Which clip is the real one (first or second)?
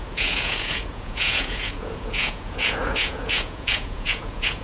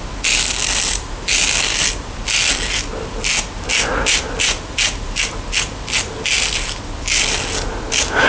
second